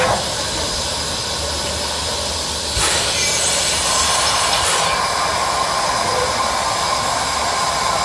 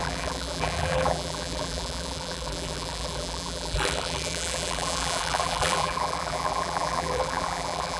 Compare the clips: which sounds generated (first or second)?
second